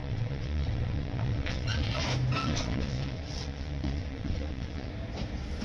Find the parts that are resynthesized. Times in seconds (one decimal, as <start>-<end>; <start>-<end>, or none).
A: 0.0-2.0; 2.4-4.9